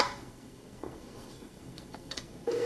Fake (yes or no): yes